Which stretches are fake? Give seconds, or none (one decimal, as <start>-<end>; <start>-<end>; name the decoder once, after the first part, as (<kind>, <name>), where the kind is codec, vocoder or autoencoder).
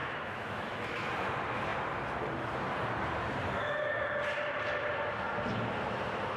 0.0-1.1 (autoencoder, DAC-VAE)